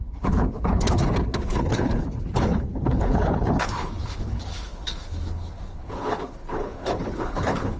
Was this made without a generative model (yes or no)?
no